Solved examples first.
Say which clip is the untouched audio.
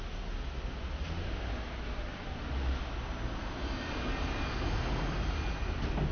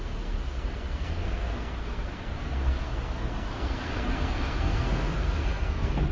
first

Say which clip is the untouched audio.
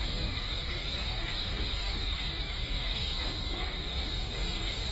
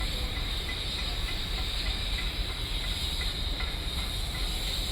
second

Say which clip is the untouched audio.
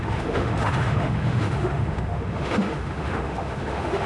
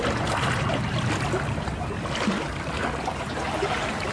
second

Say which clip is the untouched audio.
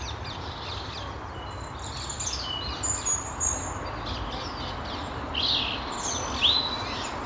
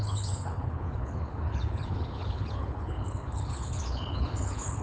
first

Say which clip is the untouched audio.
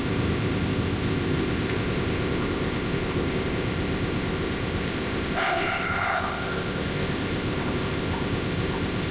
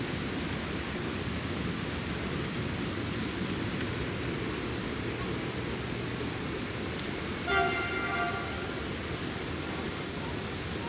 second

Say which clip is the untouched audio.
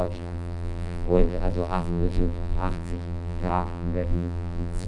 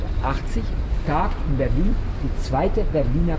second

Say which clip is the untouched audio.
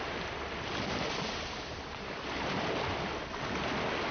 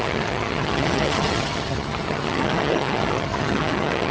first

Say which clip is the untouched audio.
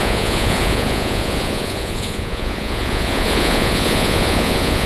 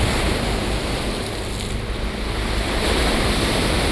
second